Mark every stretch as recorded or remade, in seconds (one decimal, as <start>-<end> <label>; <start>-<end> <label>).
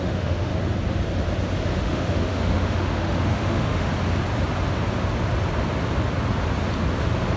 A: 0.0-0.5 remade; 0.5-1.8 recorded; 1.8-3.9 remade; 3.9-7.4 recorded